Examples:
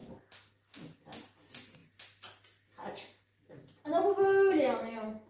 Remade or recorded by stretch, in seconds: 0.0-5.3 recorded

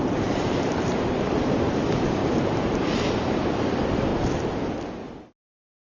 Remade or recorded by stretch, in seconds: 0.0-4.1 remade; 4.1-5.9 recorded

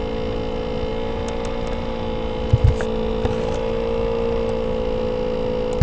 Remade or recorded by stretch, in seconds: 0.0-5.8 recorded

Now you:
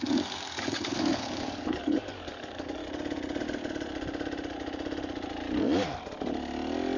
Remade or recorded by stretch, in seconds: 0.0-2.8 remade; 2.8-7.0 recorded

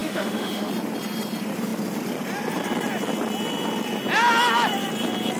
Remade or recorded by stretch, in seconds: 0.0-0.7 remade; 0.7-5.4 recorded